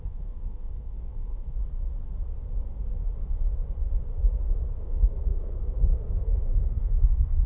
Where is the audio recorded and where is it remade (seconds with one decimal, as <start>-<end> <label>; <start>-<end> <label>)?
0.0-1.6 remade; 1.6-4.4 recorded; 4.4-7.5 remade